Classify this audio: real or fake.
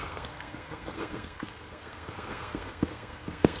fake